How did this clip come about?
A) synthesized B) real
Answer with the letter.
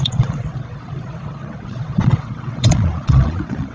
A